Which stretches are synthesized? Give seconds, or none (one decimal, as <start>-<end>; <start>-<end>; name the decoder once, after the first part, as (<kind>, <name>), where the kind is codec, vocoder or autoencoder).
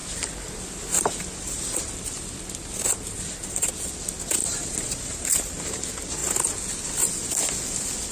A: 4.4-5.8 (vocoder, BigVGAN v2)